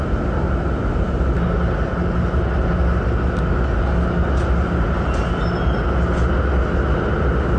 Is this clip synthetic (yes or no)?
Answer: no